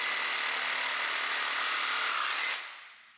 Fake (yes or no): no